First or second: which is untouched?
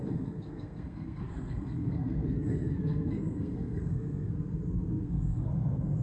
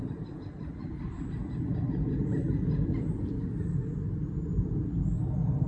second